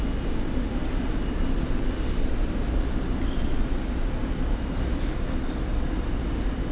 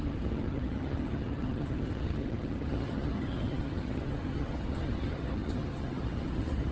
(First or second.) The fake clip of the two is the second